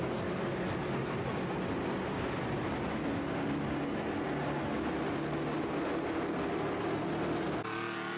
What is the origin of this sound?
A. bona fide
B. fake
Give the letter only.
A